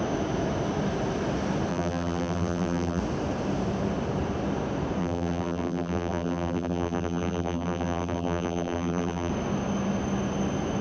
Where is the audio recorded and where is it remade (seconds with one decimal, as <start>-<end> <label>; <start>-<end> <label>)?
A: 0.0-1.7 recorded; 1.7-3.0 remade; 3.0-5.0 recorded; 5.0-9.3 remade; 9.3-10.8 recorded